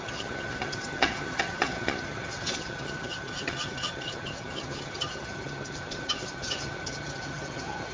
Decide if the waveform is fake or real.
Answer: fake